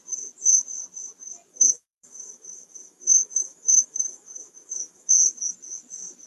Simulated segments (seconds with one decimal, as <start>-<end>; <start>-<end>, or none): 1.5-5.1